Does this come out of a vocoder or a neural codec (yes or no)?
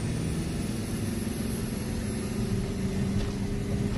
no